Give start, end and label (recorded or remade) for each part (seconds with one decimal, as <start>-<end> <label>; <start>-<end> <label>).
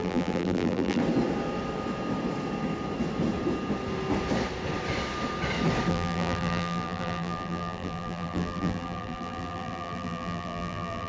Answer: 0.0-1.0 remade; 1.0-5.9 recorded; 5.9-11.1 remade